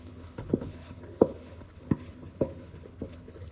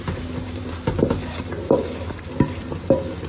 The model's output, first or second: first